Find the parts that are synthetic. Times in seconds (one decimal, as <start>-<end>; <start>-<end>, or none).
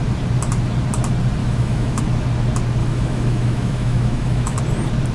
1.4-2.0; 2.8-4.6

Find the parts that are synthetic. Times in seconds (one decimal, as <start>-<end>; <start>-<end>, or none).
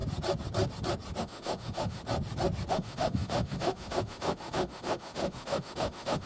1.2-2.0; 2.7-6.3